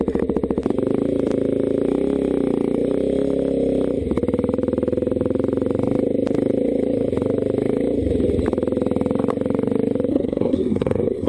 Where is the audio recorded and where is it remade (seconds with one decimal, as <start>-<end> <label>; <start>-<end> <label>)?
0.0-10.1 recorded; 10.1-11.3 remade